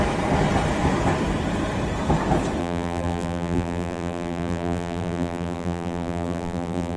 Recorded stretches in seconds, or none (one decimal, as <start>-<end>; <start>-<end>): 0.0-2.6